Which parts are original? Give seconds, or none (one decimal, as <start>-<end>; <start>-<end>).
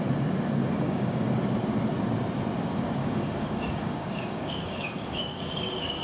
0.0-0.6; 1.3-3.0